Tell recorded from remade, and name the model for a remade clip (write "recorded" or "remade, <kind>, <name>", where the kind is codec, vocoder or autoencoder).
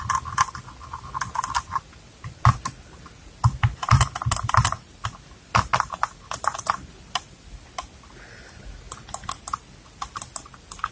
recorded